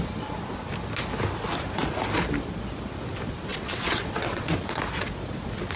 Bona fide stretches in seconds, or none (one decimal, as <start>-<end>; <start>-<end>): 0.0-3.5; 4.8-5.8